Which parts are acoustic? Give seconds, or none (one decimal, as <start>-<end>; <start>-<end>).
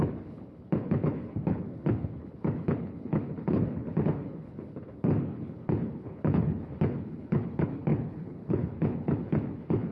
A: none